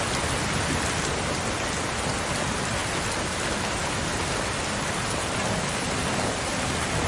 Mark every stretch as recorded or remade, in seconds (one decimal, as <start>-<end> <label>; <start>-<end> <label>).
0.0-7.1 recorded